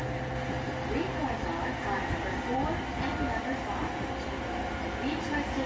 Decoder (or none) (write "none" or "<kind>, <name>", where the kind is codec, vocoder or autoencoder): none